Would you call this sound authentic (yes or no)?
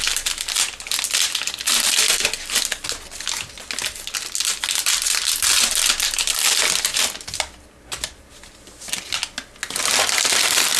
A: yes